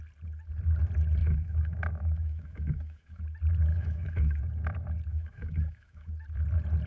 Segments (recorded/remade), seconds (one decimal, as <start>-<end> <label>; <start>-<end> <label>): 0.0-1.2 recorded; 1.2-3.2 remade; 3.2-3.7 recorded; 3.7-4.4 remade; 4.4-5.1 recorded; 5.1-6.1 remade; 6.1-6.9 recorded

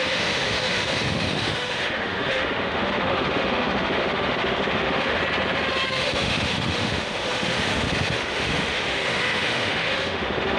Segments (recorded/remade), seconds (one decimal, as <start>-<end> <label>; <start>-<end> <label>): 0.0-5.2 remade; 5.2-5.9 recorded; 5.9-10.6 remade

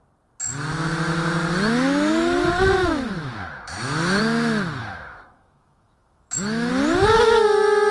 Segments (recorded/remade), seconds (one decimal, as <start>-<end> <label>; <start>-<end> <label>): 0.0-2.8 recorded; 2.8-4.2 remade; 4.2-4.8 recorded; 4.8-6.7 remade; 6.7-7.9 recorded

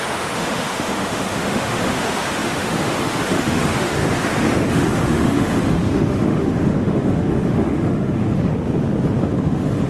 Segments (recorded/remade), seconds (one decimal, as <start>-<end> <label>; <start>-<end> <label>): 0.0-4.0 remade; 4.0-4.7 recorded; 4.7-8.5 remade; 8.5-9.2 recorded; 9.2-9.9 remade

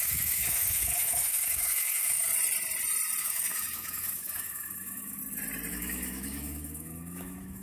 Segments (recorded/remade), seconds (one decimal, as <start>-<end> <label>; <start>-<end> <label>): 0.0-2.3 remade; 2.3-3.2 recorded; 3.2-5.2 remade; 5.2-5.7 recorded; 5.7-7.6 remade

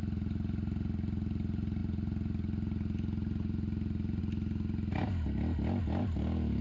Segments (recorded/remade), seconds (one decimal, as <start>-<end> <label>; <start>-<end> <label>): 0.0-6.6 recorded